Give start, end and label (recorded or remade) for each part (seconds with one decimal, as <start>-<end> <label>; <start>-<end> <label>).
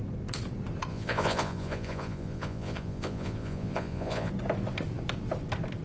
0.0-0.9 recorded; 0.9-4.3 remade; 4.3-5.8 recorded